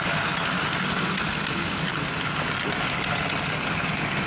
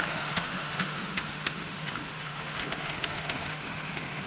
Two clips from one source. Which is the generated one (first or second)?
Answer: second